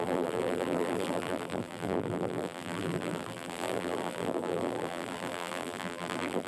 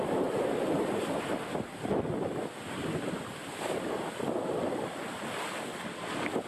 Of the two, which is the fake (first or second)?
first